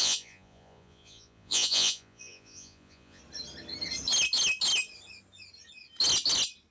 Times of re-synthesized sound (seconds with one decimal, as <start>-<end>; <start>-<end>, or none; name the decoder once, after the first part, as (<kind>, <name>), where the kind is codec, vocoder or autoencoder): 0.0-3.2 (vocoder, Vocos)